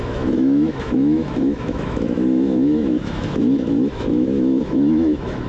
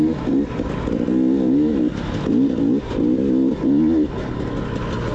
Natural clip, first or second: second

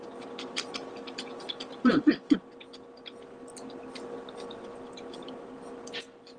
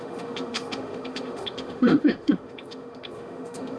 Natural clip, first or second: first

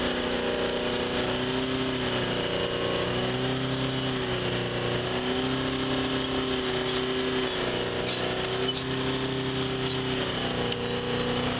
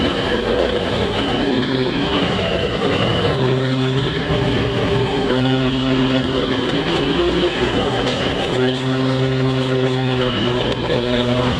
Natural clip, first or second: first